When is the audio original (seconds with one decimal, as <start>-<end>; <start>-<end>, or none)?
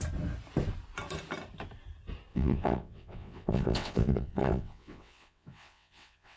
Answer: 0.0-2.3